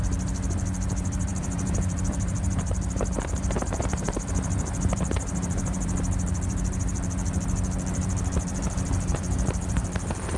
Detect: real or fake fake